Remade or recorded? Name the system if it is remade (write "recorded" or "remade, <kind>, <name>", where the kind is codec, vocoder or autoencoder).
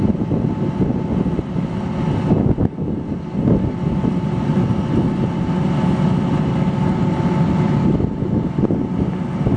recorded